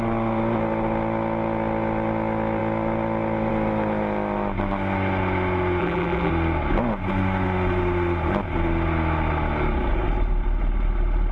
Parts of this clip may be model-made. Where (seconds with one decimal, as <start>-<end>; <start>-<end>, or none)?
5.8-6.3

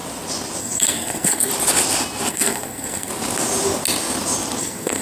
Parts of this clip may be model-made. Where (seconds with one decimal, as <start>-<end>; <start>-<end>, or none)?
0.6-1.5; 2.3-3.1; 4.6-5.0

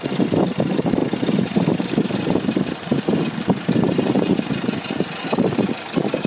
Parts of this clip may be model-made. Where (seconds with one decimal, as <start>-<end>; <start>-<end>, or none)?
0.0-1.0; 1.7-6.3

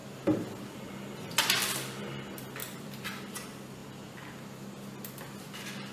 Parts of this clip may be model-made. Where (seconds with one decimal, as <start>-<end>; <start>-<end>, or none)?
2.6-3.2

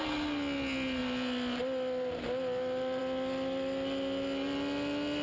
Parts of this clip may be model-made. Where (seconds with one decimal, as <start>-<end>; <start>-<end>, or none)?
none